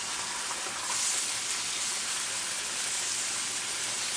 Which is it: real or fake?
real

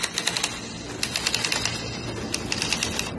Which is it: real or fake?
real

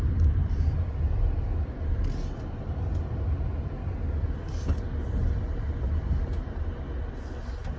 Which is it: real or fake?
real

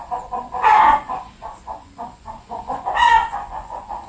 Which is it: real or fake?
fake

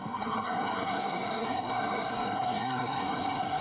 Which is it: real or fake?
fake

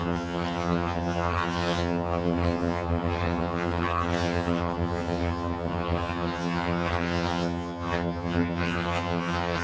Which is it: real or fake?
fake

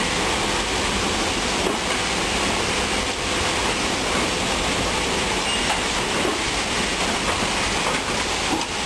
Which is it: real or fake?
real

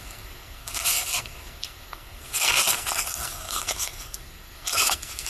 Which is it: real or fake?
fake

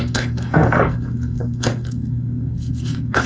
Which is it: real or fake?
fake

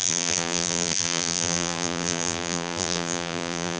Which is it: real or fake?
fake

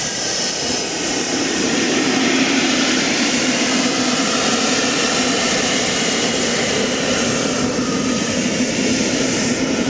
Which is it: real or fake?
fake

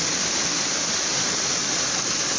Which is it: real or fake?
real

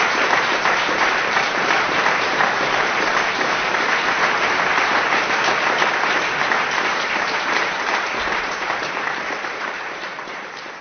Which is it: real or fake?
fake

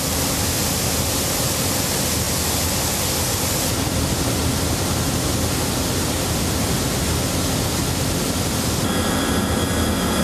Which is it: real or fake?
real